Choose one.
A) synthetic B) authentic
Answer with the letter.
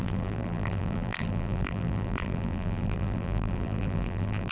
A